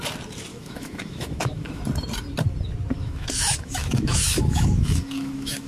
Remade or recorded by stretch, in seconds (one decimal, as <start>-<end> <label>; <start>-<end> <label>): 0.0-0.5 recorded; 0.5-1.8 remade; 1.8-3.0 recorded; 3.0-5.7 remade